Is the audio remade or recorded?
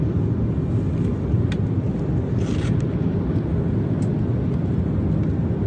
recorded